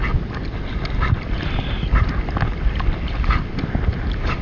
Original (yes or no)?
yes